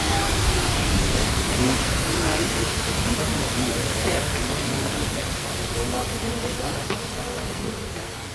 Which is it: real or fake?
fake